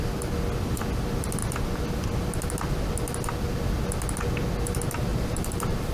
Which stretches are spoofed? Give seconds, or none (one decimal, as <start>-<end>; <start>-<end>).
5.1-5.9